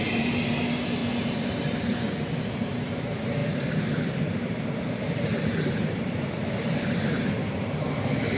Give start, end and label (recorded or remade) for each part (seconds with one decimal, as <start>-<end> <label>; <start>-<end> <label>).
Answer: 0.0-1.0 remade; 1.0-2.4 recorded; 2.4-8.4 remade